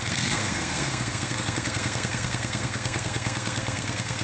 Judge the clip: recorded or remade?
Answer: remade